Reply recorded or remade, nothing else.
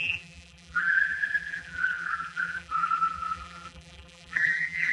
remade